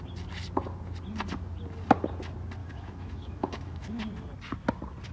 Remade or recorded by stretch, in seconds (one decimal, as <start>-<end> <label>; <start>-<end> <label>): 0.0-2.6 recorded; 2.6-4.0 remade; 4.0-5.1 recorded